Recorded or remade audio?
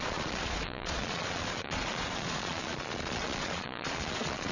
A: remade